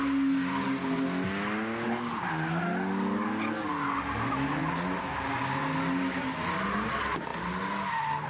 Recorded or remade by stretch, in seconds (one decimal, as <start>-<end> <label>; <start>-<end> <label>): 0.0-4.6 recorded; 4.6-5.3 remade; 5.3-8.3 recorded